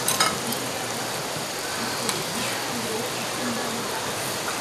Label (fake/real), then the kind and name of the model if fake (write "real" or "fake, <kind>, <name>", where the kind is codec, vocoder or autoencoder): fake, vocoder, BigVGAN v2